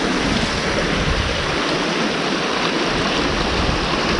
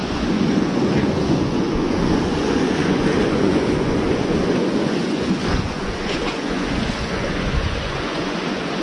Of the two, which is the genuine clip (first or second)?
first